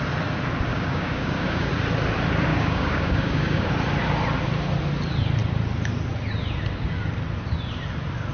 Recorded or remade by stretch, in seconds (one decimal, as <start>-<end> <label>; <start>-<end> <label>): 0.0-0.7 recorded; 0.7-1.7 remade; 1.7-2.5 recorded; 2.5-3.7 remade; 3.7-8.3 recorded